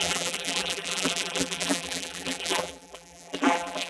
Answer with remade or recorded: remade